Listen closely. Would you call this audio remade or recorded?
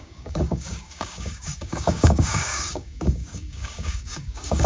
remade